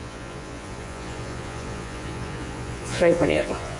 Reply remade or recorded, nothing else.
remade